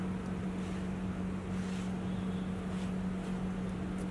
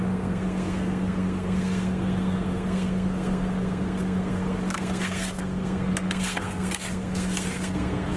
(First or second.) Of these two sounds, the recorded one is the first